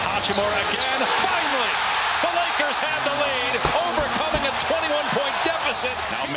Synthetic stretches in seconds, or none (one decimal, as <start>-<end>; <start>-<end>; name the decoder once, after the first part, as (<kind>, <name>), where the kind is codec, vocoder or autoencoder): none